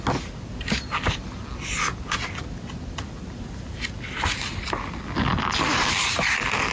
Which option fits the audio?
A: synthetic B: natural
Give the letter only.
B